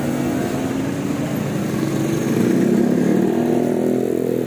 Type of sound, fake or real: real